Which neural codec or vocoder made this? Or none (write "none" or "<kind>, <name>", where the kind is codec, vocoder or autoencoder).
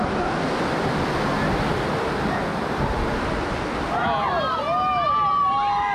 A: none